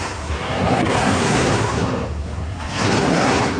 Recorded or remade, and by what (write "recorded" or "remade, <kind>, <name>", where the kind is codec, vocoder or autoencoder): remade, codec, SNAC